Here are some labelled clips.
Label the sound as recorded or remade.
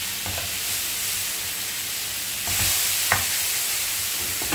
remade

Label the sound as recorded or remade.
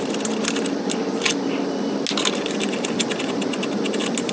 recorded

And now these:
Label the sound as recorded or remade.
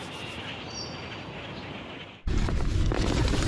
recorded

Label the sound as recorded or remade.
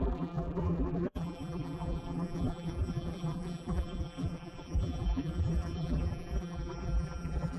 remade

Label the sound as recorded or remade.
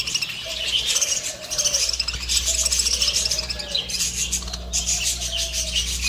recorded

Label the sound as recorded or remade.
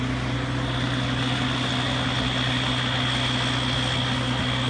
recorded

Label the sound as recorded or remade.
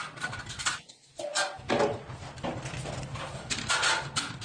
remade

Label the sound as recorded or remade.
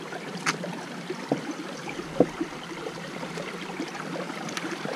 remade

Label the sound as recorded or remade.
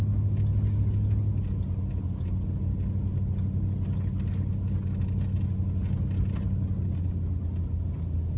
recorded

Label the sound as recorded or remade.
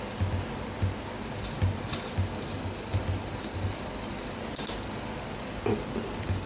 recorded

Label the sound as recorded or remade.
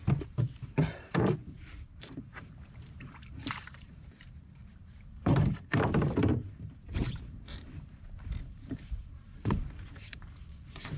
remade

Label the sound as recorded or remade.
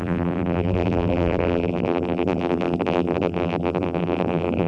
remade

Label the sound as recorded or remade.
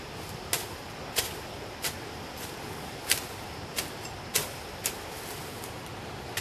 recorded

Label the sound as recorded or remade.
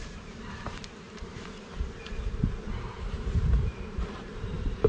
remade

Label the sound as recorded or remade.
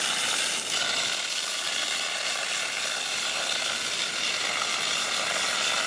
remade